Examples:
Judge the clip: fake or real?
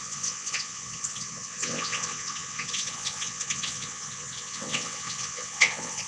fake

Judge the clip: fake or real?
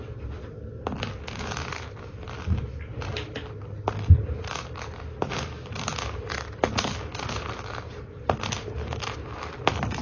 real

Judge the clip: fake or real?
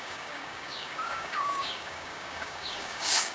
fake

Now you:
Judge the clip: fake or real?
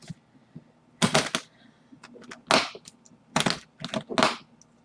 real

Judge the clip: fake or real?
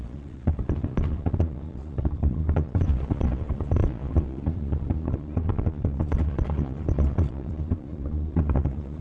fake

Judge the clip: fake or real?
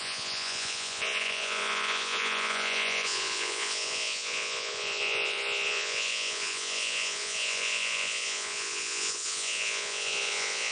fake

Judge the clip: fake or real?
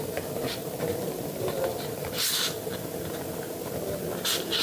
real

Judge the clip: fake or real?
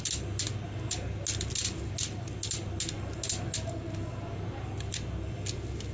real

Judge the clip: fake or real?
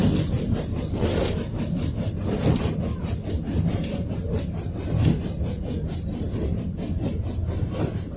real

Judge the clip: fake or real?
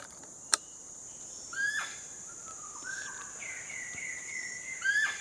fake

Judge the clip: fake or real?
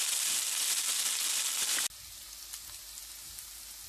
real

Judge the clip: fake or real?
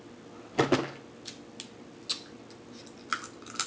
real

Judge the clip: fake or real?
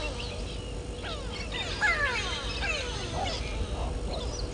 real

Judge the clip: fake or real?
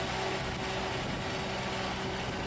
real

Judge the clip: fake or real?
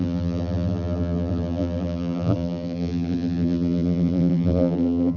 fake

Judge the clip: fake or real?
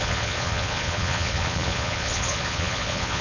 fake